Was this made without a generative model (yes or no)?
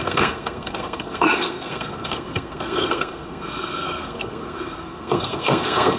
no